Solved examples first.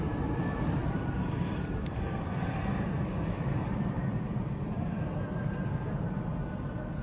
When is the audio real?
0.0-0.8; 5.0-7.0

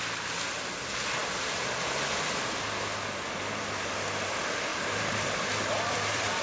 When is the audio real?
0.0-1.2; 1.7-4.7